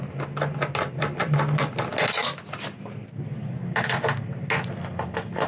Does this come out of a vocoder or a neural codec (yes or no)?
no